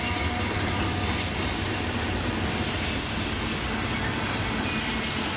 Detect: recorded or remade recorded